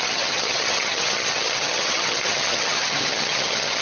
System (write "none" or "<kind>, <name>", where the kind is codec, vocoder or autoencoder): vocoder, HiFi-GAN